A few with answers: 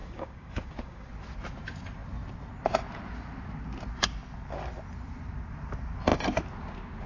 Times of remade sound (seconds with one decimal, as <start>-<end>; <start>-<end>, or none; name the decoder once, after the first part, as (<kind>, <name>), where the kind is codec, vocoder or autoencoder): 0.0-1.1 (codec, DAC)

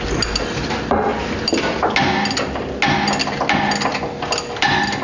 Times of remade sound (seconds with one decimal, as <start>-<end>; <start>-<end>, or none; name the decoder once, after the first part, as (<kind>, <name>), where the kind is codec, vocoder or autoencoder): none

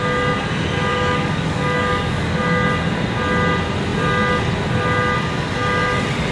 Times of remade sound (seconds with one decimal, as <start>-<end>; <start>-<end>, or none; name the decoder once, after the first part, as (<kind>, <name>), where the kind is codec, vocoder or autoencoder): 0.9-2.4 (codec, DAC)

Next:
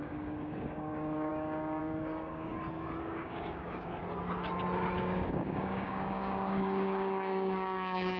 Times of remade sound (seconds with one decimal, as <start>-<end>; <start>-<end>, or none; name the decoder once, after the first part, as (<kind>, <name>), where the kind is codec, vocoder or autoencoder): 0.0-2.5 (codec, DAC); 3.0-4.0; 5.0-8.2